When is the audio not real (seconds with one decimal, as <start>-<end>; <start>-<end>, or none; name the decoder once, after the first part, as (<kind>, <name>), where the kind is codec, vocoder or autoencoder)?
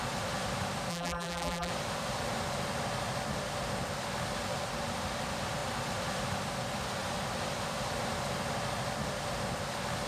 0.9-1.7 (vocoder, BigVGAN v2)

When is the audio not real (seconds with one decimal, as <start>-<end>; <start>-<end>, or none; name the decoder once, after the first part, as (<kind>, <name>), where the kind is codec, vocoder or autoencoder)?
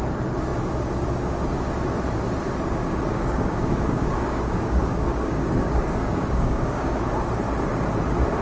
2.8-6.9 (codec, DAC)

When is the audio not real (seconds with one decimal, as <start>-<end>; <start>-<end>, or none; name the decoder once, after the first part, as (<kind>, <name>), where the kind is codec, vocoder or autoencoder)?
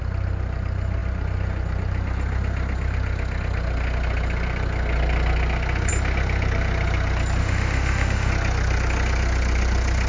7.4-8.3 (autoencoder, DAC-VAE)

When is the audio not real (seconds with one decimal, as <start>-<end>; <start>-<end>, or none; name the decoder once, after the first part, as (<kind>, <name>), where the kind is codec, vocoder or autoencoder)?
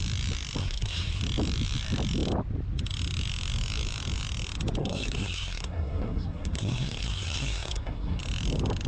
0.6-1.2 (codec, SNAC); 4.8-8.2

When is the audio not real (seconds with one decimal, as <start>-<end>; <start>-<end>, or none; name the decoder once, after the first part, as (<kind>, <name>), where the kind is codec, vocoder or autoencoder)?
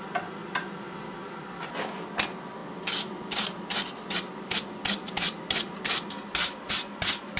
none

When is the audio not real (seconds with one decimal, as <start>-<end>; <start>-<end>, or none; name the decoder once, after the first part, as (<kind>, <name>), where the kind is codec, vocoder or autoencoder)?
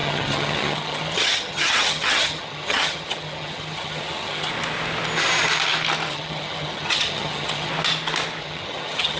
0.0-4.5 (vocoder, HiFi-GAN); 6.1-7.7; 8.4-9.2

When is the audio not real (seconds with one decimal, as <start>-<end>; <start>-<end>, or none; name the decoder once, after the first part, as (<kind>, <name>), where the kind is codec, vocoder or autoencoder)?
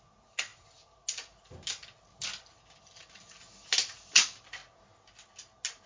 none